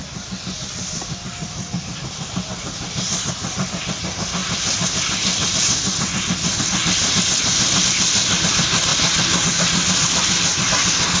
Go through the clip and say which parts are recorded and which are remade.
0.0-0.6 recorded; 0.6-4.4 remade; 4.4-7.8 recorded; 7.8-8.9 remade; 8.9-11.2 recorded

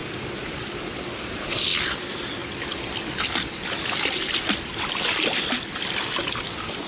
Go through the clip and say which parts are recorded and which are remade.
0.0-6.9 recorded

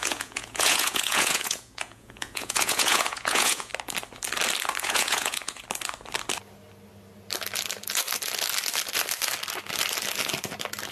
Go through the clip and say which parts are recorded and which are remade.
0.0-3.7 remade; 3.7-4.8 recorded; 4.8-5.6 remade; 5.6-10.9 recorded

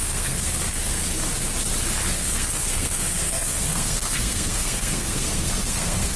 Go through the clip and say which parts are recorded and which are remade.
0.0-1.0 remade; 1.0-2.1 recorded; 2.1-6.2 remade

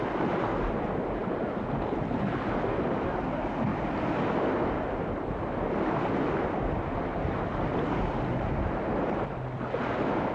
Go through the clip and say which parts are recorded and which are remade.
0.0-10.3 recorded

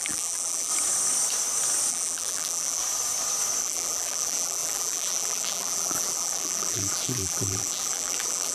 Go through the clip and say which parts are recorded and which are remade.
0.0-0.7 remade; 0.7-1.9 recorded; 1.9-2.8 remade; 2.8-3.6 recorded; 3.6-8.5 remade